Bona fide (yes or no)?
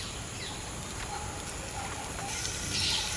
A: yes